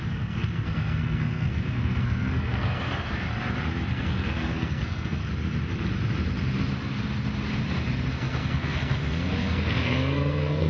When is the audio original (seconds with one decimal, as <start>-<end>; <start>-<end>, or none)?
3.3-3.9; 5.2-8.1